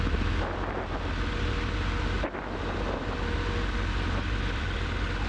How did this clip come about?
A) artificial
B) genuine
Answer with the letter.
B